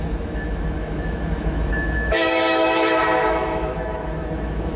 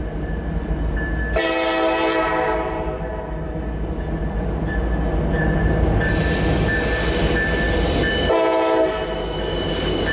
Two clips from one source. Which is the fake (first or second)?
first